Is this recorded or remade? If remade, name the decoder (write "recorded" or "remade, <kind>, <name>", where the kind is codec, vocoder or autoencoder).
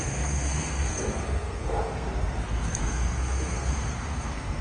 remade, codec, SNAC